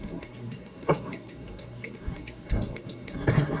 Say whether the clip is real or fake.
fake